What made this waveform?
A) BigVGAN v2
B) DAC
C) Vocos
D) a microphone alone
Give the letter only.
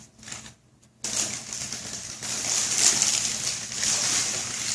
D